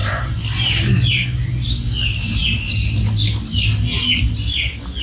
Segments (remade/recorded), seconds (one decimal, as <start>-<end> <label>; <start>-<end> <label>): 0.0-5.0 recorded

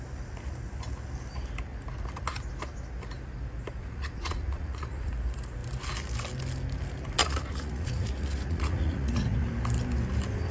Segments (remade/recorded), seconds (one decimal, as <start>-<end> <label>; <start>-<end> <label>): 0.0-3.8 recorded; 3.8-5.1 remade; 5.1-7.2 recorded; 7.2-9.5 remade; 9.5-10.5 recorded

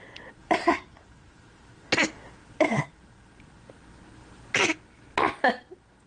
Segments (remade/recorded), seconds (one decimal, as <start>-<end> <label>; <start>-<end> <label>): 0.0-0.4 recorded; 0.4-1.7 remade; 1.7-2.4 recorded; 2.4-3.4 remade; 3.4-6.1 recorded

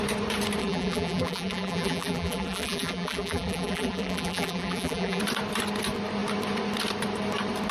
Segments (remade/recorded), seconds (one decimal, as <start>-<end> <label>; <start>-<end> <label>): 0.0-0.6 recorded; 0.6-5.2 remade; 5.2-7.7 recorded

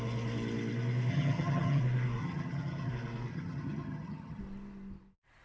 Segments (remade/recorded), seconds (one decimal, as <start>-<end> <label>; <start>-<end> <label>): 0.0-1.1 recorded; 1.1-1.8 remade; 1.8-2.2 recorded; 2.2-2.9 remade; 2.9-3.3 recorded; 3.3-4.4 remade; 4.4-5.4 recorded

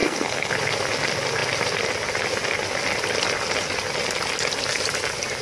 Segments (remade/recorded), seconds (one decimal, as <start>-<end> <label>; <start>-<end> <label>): 0.0-0.5 remade; 0.5-5.4 recorded